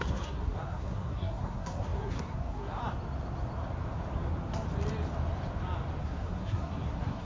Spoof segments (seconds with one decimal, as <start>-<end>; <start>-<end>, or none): 0.0-2.8; 6.0-7.2